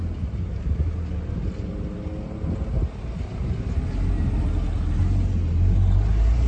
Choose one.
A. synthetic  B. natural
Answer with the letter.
B